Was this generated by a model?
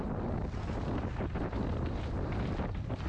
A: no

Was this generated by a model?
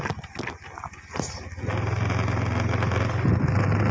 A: no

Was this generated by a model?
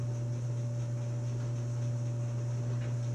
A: no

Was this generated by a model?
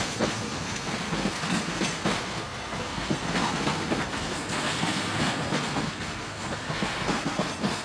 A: yes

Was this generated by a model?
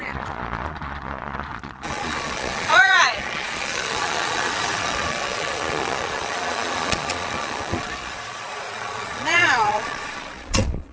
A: yes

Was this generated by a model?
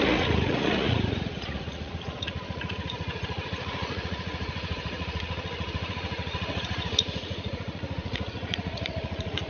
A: yes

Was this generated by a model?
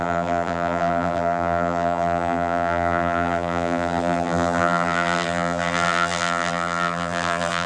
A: yes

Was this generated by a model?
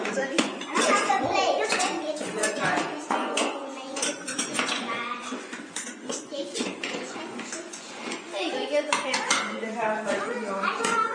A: yes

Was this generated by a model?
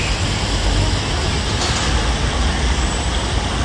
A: no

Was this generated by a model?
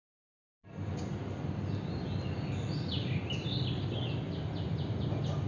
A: no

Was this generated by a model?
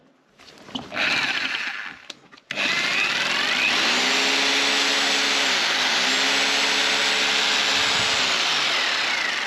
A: no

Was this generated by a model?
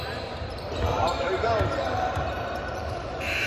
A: yes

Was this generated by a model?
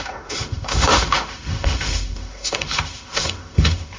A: yes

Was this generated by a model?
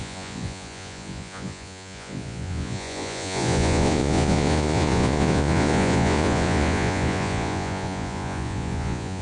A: yes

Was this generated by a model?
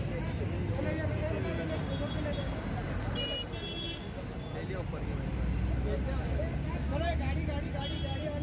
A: no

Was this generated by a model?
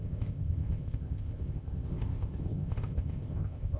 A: yes